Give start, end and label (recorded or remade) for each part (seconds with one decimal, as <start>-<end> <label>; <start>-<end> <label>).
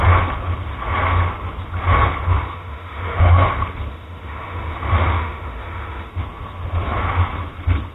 0.0-2.4 recorded; 2.4-3.5 remade; 3.5-3.9 recorded; 3.9-6.1 remade; 6.1-7.9 recorded